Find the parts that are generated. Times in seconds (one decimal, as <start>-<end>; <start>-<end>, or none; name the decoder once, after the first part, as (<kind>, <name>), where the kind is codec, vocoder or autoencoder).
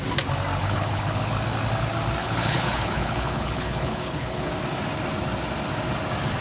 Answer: 0.6-1.3 (codec, HILCodec); 2.2-4.5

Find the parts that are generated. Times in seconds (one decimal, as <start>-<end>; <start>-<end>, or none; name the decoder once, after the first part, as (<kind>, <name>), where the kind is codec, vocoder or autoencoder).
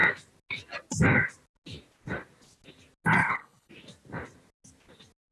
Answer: 3.2-3.7 (codec, HILCodec)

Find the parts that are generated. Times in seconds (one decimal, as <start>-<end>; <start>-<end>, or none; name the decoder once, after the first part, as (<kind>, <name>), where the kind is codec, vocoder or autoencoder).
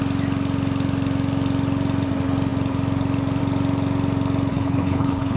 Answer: 4.5-5.4 (codec, HILCodec)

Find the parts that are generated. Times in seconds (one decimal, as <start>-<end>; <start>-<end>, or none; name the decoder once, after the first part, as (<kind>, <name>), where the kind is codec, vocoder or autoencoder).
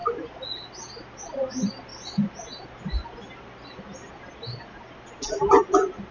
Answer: none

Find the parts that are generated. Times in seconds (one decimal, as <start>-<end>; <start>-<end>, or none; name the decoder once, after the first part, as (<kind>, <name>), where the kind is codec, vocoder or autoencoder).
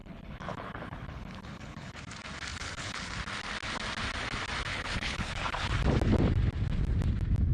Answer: 0.0-2.0 (codec, HILCodec); 2.5-3.1; 4.7-5.7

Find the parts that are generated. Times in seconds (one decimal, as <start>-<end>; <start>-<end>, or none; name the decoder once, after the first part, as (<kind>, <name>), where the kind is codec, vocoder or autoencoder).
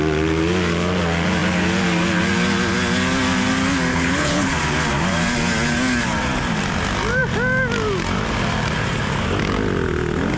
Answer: 3.9-4.5 (codec, HILCodec)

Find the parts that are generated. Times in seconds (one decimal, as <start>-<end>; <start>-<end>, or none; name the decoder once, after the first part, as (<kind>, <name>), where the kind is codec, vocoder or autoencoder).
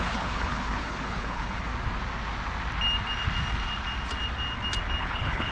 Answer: 0.0-1.7 (codec, HILCodec); 5.0-5.5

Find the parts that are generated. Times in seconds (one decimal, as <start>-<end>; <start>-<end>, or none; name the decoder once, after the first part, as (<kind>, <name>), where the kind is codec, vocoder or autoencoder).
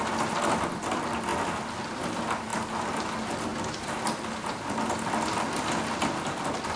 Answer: none